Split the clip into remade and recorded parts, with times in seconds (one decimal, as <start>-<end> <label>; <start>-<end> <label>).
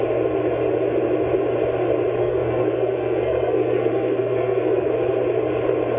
0.0-2.2 recorded; 2.2-4.9 remade; 4.9-6.0 recorded